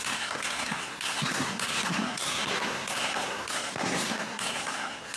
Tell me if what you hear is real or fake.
fake